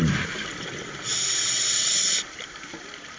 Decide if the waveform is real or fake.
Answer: real